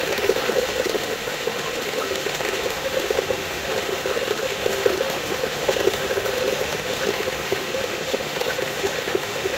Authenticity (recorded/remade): remade